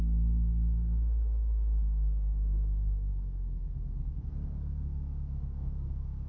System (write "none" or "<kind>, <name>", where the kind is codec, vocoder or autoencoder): codec, SNAC